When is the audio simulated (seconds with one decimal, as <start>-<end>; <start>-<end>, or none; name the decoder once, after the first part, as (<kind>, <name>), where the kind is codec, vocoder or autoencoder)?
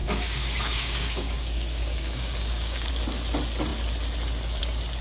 0.0-2.9 (codec, DAC)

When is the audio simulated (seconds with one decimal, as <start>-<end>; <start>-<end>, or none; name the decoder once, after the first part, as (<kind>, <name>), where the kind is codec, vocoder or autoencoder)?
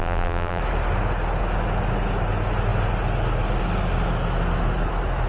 0.0-0.6 (vocoder, BigVGAN v2)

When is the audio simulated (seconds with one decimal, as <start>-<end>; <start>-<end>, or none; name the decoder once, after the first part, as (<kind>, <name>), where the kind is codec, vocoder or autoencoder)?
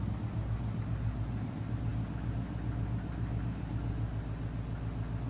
none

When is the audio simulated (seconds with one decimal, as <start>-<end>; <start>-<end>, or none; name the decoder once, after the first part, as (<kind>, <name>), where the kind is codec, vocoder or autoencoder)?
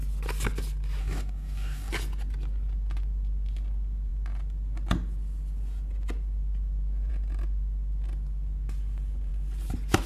1.0-1.9 (codec, DAC)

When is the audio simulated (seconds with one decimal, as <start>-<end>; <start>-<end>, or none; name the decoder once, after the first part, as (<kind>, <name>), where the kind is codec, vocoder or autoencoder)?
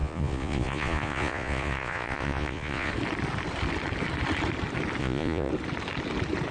0.0-2.9 (vocoder, Vocos); 5.0-5.5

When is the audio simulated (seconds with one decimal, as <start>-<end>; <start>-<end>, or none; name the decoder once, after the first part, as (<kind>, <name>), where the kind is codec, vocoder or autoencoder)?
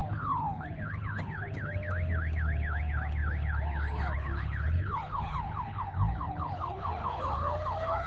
0.0-8.1 (codec, HILCodec)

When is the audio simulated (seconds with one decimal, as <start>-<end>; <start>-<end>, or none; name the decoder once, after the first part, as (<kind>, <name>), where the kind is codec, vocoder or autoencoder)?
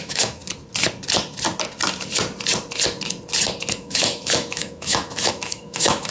0.0-0.4 (autoencoder, DAC-VAE); 3.8-6.1